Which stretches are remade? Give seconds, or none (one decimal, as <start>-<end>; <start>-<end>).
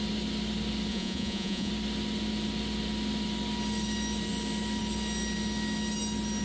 0.9-1.7